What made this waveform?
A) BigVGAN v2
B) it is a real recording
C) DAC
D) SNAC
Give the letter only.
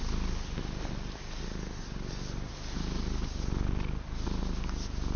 B